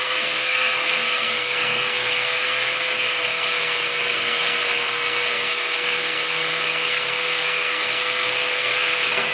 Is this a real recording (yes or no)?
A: no